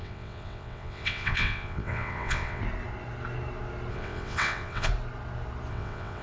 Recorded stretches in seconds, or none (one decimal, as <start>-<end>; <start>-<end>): 2.6-3.9; 4.9-5.7